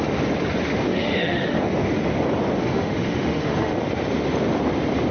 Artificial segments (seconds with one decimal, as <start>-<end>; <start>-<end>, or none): 0.9-1.6; 2.6-3.8